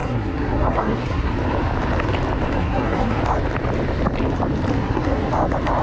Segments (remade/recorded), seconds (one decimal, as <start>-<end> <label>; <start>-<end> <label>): 0.0-1.3 remade; 1.3-2.6 recorded; 2.6-3.2 remade; 3.2-4.7 recorded; 4.7-5.3 remade; 5.3-5.8 recorded